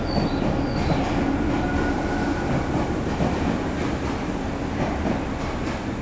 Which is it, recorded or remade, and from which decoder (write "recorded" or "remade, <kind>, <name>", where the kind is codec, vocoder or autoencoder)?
recorded